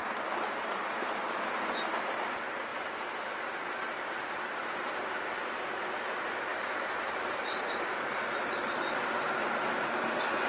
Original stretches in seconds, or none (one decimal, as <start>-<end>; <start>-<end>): 0.9-2.7; 4.9-6.5; 7.2-10.5